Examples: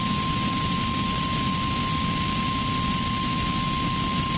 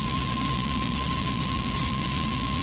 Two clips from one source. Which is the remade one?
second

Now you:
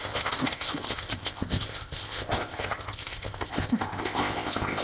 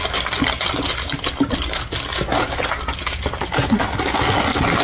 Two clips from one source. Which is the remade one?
first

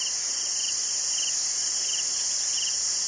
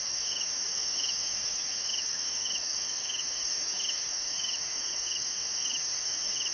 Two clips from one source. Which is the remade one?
second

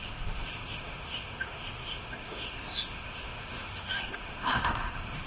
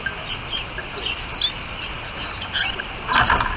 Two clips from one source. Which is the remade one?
first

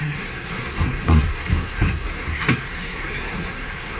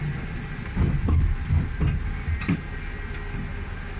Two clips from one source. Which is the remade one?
first